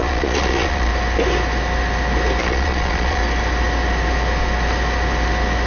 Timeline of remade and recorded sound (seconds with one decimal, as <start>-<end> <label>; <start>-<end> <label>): 0.0-0.9 remade; 0.9-2.4 recorded; 2.4-3.2 remade; 3.2-5.7 recorded